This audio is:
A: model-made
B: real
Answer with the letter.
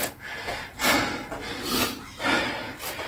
B